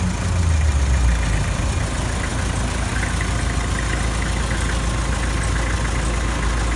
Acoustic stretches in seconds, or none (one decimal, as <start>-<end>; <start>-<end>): 0.0-6.8